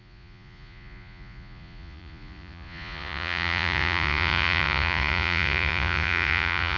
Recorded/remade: remade